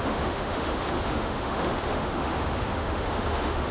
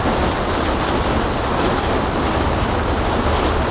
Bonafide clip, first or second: second